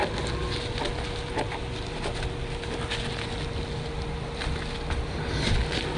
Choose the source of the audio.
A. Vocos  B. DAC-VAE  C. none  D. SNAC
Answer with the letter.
C